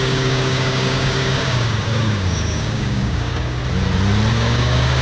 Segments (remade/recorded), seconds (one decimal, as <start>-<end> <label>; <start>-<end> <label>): 0.0-3.6 remade; 3.6-4.3 recorded; 4.3-5.0 remade